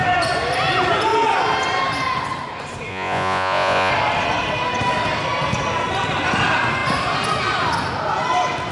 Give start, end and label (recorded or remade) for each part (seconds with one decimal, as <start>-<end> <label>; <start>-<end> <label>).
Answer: 0.0-2.9 recorded; 2.9-3.9 remade; 3.9-8.7 recorded